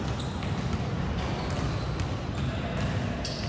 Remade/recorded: recorded